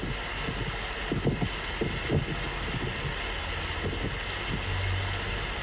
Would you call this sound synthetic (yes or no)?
no